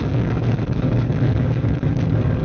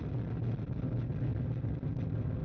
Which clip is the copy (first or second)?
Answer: first